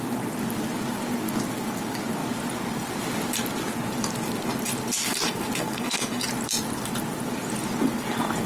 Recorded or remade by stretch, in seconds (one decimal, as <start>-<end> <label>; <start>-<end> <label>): 0.0-5.6 recorded; 5.6-6.2 remade; 6.2-8.5 recorded